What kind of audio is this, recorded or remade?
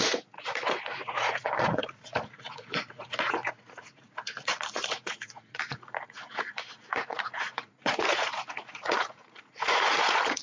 remade